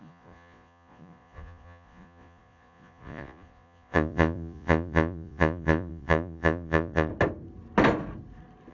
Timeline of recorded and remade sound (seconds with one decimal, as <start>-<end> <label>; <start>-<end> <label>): 0.0-7.1 remade; 7.1-8.7 recorded